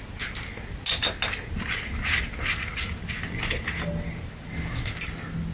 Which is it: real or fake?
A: real